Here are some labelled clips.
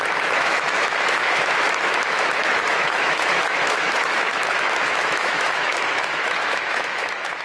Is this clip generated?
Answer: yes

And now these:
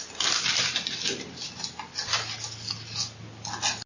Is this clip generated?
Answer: no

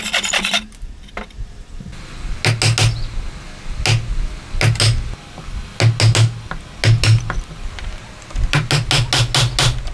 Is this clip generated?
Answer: no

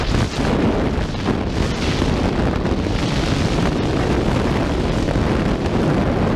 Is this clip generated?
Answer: no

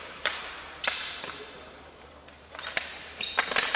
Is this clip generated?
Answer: yes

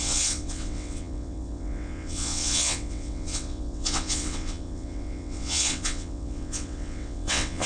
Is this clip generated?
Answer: yes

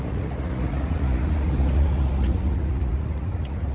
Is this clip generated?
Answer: yes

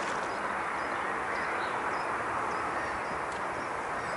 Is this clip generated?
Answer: no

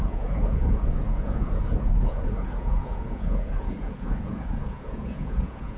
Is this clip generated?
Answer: yes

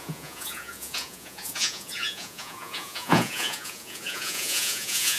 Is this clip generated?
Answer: yes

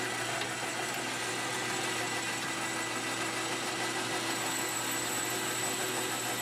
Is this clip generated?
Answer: no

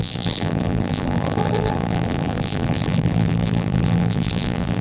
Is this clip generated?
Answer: yes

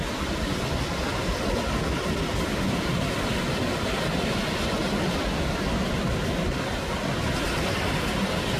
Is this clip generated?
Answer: no